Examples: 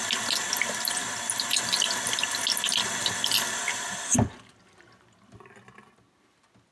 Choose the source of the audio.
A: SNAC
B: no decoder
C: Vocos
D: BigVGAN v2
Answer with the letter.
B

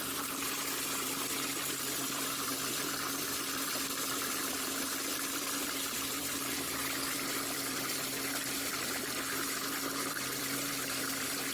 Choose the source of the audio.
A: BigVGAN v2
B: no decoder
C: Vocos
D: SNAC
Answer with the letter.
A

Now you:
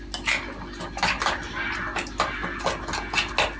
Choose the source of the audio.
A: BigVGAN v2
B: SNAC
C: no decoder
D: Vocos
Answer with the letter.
C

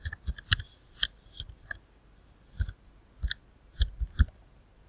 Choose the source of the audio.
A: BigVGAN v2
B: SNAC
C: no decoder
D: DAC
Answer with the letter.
C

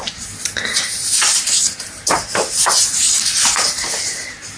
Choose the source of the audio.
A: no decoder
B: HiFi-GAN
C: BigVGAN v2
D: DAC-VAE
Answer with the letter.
C